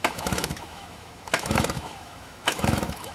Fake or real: fake